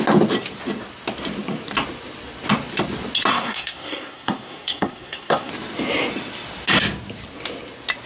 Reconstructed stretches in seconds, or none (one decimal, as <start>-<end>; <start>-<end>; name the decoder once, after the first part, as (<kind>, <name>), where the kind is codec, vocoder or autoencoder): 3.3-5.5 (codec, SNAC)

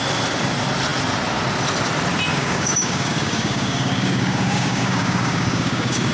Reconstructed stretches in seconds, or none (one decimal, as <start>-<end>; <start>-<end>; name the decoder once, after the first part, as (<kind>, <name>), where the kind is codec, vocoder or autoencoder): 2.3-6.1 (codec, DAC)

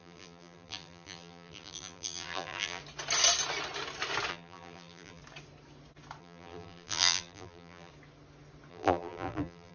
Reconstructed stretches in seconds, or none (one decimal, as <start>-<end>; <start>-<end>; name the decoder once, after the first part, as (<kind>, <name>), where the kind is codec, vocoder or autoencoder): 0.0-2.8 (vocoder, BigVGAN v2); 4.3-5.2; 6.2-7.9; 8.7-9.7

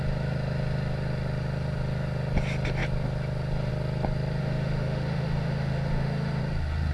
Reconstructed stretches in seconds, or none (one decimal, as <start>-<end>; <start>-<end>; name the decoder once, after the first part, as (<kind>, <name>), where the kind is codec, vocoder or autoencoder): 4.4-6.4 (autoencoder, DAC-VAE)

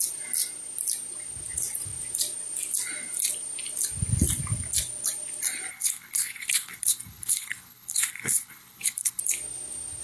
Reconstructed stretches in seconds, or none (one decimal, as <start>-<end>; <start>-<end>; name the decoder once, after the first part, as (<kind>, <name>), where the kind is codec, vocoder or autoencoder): 5.7-9.2 (codec, HILCodec)